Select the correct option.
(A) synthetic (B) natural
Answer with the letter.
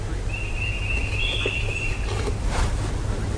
B